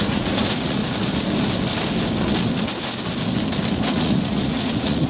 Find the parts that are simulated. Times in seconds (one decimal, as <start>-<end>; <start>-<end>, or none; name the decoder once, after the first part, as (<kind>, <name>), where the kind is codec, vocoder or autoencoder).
0.0-0.8 (vocoder, Vocos); 3.9-5.1